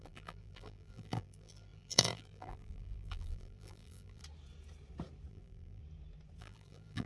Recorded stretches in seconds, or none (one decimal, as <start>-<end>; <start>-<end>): 4.2-5.3; 5.8-6.4